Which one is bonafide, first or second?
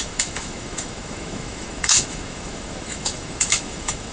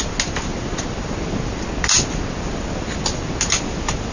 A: second